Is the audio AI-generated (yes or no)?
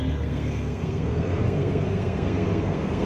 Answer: yes